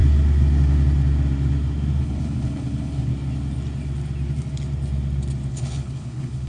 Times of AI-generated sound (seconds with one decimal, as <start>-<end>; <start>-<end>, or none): 2.0-3.1; 5.5-6.5